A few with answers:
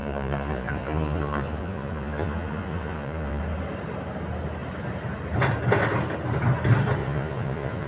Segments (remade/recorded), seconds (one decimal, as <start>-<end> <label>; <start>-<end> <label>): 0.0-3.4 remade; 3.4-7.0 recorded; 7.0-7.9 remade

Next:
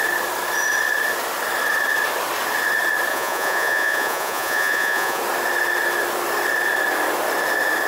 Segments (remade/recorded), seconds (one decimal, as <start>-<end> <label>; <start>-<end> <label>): 0.0-3.1 recorded; 3.1-5.2 remade; 5.2-7.9 recorded

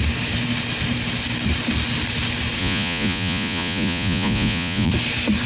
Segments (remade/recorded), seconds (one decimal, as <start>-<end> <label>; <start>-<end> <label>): 0.0-2.6 recorded; 2.6-4.9 remade; 4.9-5.5 recorded

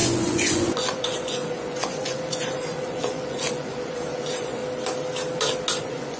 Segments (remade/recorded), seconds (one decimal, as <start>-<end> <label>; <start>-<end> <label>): 0.0-4.6 remade; 4.6-5.8 recorded; 5.8-6.2 remade